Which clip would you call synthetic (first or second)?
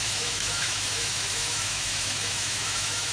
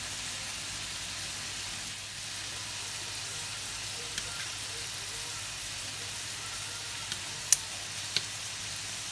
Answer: first